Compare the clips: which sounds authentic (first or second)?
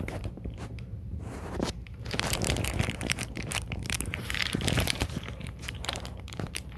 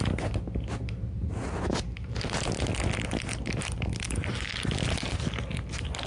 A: second